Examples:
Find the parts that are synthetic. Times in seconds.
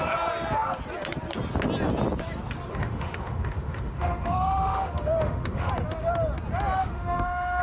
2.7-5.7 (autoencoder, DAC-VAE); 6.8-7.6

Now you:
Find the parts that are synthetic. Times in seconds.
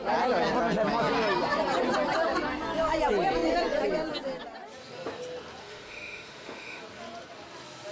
5.6-6.8 (autoencoder, DAC-VAE)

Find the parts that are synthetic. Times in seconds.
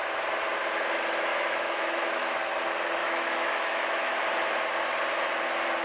1.3-2.4 (autoencoder, DAC-VAE); 3.0-4.2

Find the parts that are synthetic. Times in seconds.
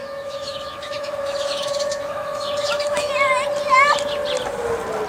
0.0-3.1 (autoencoder, DAC-VAE)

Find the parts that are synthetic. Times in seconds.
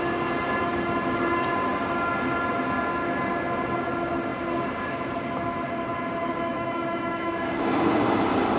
6.5-7.5 (autoencoder, DAC-VAE)